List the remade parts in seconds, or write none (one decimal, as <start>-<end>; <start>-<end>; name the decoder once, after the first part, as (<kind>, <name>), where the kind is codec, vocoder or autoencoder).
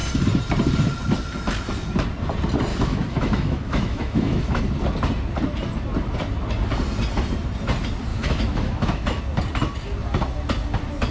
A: 2.7-4.6 (autoencoder, DAC-VAE); 8.1-9.2